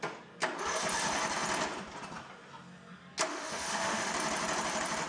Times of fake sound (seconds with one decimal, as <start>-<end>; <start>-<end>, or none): 3.3-4.1

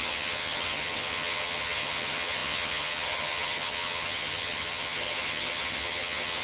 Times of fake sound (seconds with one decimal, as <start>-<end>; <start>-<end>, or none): 0.0-6.4

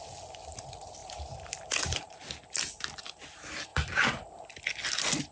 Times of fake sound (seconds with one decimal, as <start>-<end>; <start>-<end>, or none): 1.0-2.2; 3.7-4.5